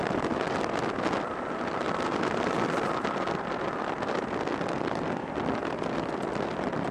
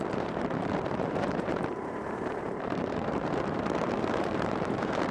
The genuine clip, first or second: first